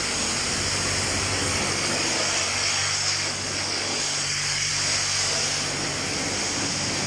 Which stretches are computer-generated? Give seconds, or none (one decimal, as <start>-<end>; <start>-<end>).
1.4-4.7